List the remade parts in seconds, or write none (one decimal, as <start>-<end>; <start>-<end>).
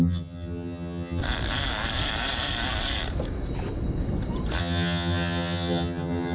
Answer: 0.0-1.2; 4.6-6.3